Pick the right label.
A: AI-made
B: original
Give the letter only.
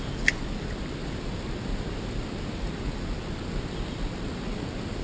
B